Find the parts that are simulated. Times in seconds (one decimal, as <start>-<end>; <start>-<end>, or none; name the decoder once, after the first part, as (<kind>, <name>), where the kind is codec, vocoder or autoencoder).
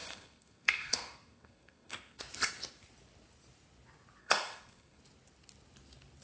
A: 0.0-2.2 (codec, SNAC); 4.2-5.0